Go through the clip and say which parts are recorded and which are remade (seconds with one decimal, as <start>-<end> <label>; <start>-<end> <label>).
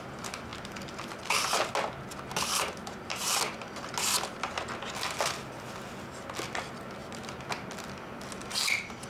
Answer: 0.0-9.1 recorded